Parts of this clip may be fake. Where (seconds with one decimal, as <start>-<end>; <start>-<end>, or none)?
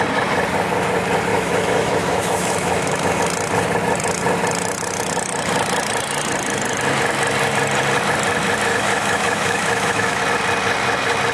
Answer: 1.3-3.2; 8.7-10.2